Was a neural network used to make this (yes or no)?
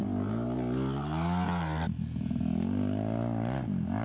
no